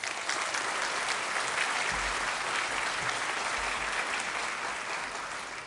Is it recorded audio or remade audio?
recorded